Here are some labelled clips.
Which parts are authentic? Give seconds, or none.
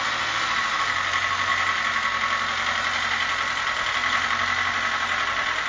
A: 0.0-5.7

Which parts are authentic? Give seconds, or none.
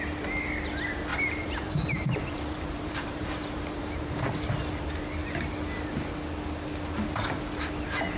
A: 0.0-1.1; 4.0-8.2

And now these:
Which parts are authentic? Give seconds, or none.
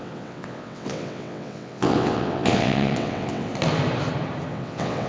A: 3.5-4.5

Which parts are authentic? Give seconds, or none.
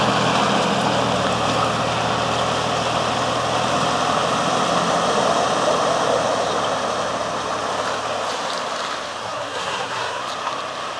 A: 0.0-9.2; 10.2-11.0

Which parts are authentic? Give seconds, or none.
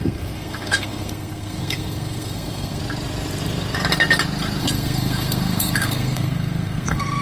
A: 2.8-4.6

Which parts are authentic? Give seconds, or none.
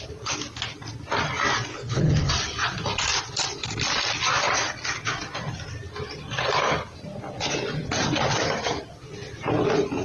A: 0.0-1.7; 2.3-10.0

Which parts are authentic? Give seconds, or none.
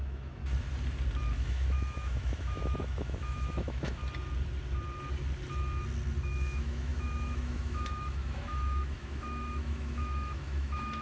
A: 0.4-1.3; 4.0-6.2